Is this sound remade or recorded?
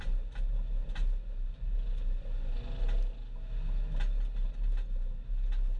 recorded